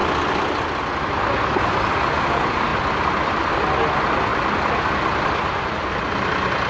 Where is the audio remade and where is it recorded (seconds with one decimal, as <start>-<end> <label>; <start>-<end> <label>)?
0.0-2.7 recorded; 2.7-3.5 remade; 3.5-4.3 recorded; 4.3-5.9 remade; 5.9-6.7 recorded